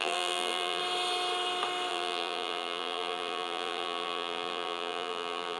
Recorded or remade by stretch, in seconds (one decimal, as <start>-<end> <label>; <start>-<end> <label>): 0.0-0.8 remade; 0.8-1.9 recorded; 1.9-5.6 remade